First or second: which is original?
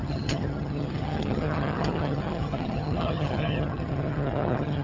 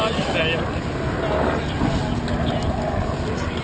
second